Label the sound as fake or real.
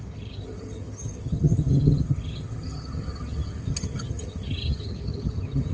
fake